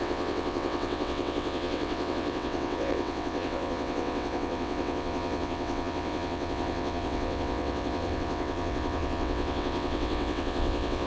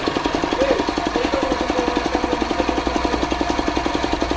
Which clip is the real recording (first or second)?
second